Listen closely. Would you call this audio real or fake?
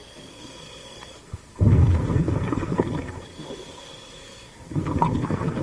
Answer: fake